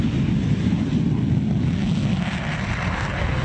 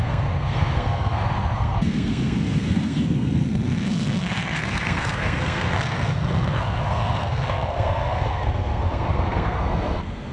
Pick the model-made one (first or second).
second